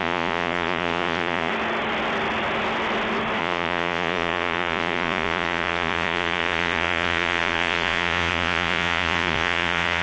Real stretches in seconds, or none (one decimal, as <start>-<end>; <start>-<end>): 1.5-3.4